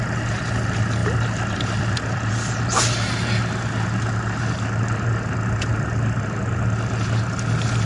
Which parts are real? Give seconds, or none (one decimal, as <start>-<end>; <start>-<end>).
0.0-1.0; 2.3-7.9